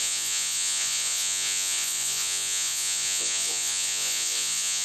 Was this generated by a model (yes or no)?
yes